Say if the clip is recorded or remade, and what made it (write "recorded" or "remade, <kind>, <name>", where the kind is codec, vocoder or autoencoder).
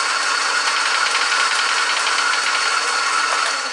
recorded